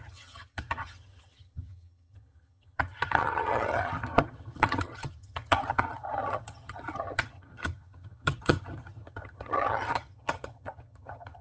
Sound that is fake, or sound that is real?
fake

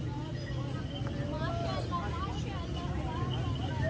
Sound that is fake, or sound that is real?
real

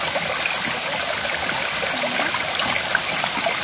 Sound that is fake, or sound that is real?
real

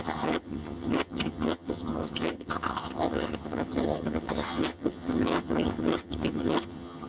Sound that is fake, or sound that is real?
fake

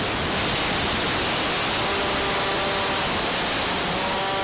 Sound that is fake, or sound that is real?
real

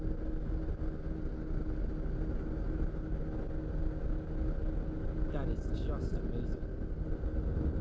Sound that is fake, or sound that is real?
real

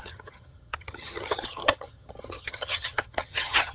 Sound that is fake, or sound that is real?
fake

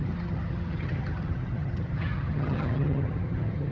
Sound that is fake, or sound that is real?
fake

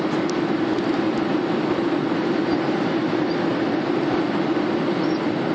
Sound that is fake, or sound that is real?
real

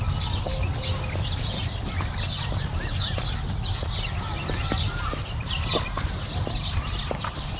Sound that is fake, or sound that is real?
real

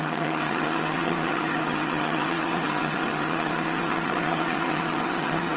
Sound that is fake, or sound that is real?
fake